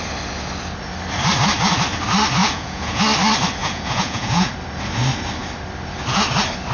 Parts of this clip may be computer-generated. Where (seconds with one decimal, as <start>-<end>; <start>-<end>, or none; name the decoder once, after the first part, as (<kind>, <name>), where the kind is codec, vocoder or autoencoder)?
2.4-3.0 (vocoder, Vocos); 3.6-4.5